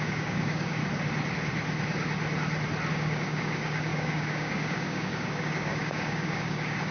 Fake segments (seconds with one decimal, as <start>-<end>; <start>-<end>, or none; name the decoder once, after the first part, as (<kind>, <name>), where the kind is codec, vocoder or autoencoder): 0.0-0.8 (codec, DAC); 2.9-6.9